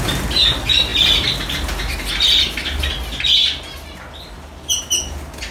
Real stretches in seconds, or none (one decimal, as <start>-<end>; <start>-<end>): 0.0-5.5